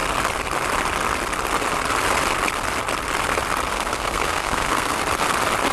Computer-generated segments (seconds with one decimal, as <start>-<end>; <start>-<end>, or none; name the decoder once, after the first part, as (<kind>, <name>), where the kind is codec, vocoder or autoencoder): 3.7-5.0 (codec, SNAC)